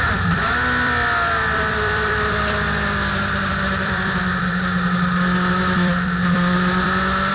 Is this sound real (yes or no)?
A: no